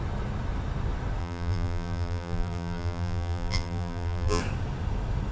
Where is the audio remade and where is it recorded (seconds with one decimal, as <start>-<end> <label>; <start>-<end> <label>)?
0.0-1.2 recorded; 1.2-4.4 remade; 4.4-5.3 recorded